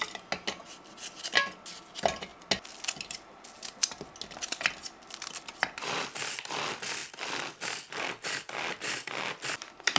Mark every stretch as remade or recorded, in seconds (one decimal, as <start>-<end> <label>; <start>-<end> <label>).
0.0-10.0 recorded